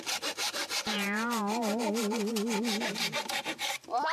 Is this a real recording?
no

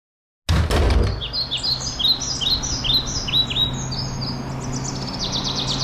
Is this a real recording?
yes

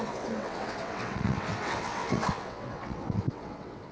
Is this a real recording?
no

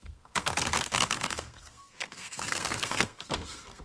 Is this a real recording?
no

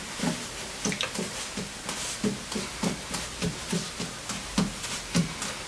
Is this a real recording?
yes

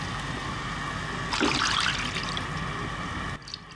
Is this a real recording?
yes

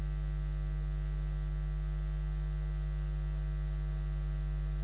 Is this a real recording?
yes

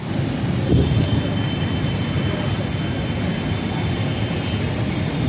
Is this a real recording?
yes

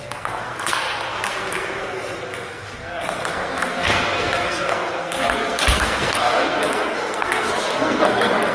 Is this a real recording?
no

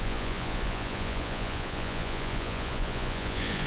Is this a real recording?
no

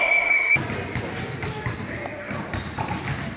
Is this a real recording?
yes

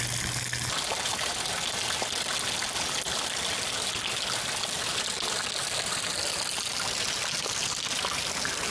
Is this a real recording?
yes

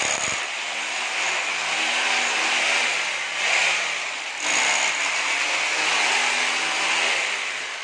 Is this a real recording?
yes